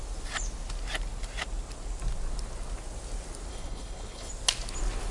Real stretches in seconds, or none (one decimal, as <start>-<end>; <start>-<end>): 0.0-3.5; 4.3-5.1